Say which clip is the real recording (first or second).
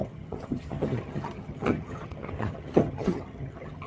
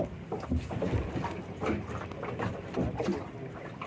second